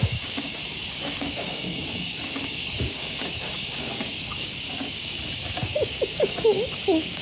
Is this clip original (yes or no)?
no